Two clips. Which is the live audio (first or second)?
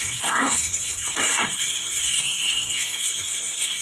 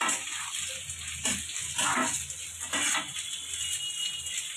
second